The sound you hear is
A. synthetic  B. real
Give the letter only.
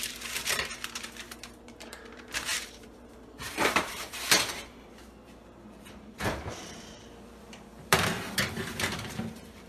A